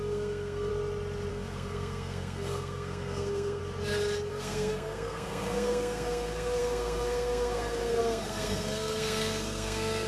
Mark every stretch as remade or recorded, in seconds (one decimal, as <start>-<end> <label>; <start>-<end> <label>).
0.0-0.7 remade; 0.7-1.3 recorded; 1.3-3.6 remade; 3.6-4.3 recorded; 4.3-10.1 remade